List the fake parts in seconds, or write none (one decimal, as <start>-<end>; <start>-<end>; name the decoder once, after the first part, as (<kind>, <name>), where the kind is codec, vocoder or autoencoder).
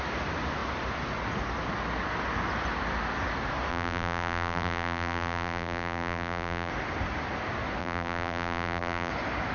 3.7-6.7 (vocoder, BigVGAN v2); 7.8-9.1